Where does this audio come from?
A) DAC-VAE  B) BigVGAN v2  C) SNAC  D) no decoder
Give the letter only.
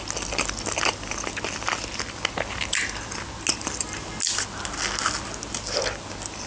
D